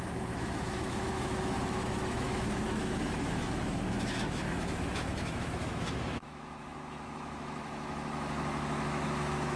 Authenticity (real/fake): fake